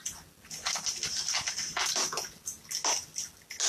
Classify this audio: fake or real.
real